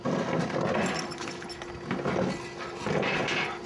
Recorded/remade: recorded